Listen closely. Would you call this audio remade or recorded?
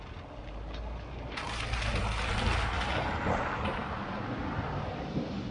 recorded